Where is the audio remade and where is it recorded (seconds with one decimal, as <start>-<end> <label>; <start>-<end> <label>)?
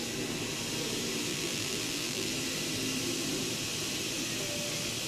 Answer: 0.0-1.3 recorded; 1.3-2.3 remade; 2.3-5.1 recorded